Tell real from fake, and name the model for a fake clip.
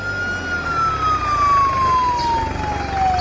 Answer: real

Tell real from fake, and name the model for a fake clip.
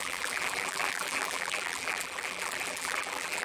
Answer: fake, vocoder, BigVGAN v2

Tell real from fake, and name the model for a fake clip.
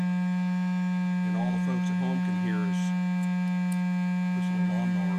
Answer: real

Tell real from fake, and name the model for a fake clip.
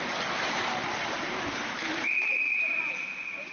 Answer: fake, vocoder, BigVGAN v2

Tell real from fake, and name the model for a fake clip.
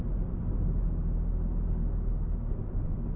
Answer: real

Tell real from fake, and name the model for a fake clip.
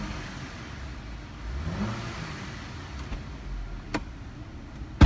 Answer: real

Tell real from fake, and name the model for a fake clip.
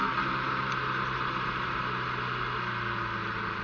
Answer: real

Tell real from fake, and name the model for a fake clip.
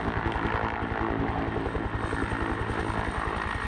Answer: real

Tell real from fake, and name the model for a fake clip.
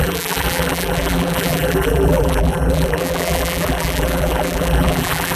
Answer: fake, vocoder, BigVGAN v2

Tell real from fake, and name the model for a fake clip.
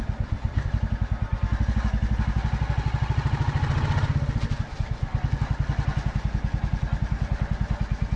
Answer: real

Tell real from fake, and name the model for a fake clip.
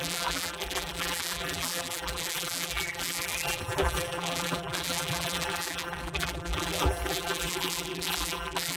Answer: fake, vocoder, BigVGAN v2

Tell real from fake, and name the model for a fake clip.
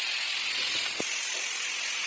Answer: real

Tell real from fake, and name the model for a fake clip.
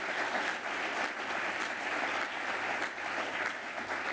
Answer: real